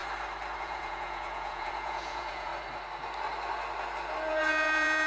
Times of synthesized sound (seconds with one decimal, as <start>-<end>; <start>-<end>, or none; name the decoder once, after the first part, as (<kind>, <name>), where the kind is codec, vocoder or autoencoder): 0.6-2.5 (vocoder, Vocos); 4.3-5.1